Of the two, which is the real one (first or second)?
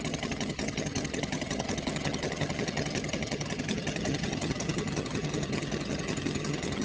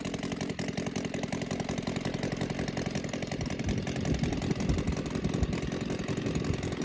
second